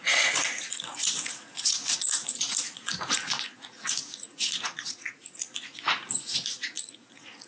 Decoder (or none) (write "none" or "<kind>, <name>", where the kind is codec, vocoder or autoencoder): vocoder, Vocos